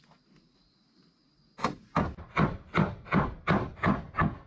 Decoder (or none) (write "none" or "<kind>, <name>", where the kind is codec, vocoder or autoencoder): none